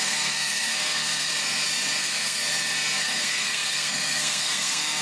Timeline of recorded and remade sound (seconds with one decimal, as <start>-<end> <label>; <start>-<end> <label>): 0.0-1.3 remade; 1.3-2.0 recorded; 2.0-2.4 remade; 2.4-3.0 recorded; 3.0-5.0 remade